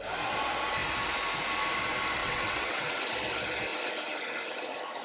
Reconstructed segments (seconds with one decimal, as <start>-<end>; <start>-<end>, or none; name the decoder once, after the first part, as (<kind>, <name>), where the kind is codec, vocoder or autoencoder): 2.2-3.0 (vocoder, WaveNeXt)